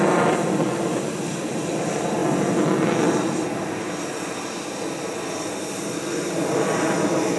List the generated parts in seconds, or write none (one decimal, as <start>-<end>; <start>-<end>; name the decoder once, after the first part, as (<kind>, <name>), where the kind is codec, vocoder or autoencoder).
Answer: none